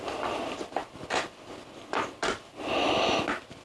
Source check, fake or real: real